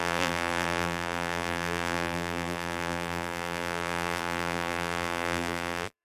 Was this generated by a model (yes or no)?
yes